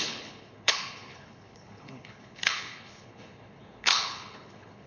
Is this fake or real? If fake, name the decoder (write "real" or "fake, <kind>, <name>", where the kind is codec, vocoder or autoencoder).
fake, codec, HILCodec